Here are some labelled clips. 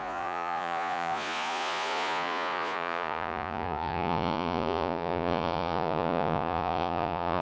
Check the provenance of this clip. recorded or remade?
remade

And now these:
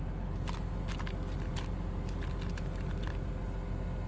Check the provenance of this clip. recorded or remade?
recorded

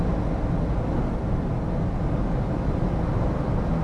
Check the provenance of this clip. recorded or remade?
recorded